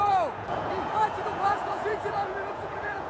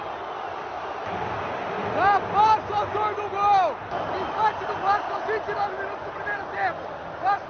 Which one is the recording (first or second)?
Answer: second